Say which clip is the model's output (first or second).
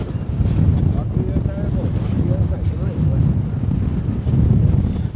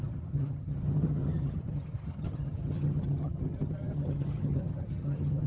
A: second